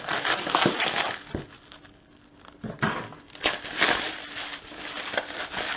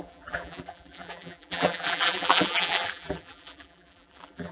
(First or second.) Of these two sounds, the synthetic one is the second